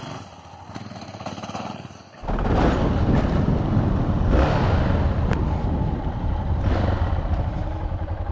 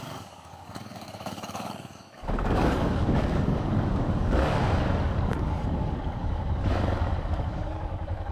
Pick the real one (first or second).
first